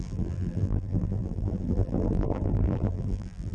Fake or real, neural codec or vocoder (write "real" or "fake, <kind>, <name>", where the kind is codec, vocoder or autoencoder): fake, vocoder, BigVGAN v2